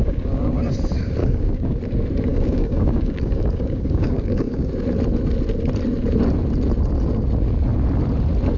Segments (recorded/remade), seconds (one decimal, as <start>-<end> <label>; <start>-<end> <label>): 0.0-0.7 remade; 0.7-1.2 recorded; 1.2-1.8 remade; 1.8-2.3 recorded; 2.3-4.7 remade; 4.7-8.6 recorded